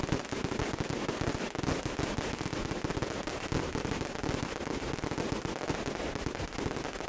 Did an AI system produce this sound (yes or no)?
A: no